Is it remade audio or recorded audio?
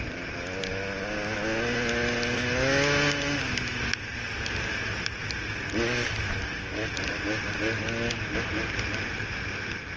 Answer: recorded